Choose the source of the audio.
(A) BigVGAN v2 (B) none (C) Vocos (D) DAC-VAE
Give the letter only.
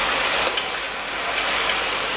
A